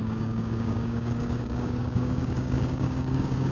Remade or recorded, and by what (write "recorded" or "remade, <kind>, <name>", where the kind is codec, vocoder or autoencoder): remade, codec, DAC